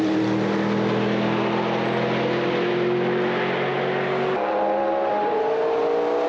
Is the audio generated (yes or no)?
no